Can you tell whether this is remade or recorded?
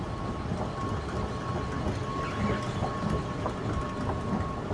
recorded